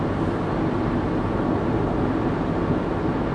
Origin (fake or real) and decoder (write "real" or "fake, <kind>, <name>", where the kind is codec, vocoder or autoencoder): real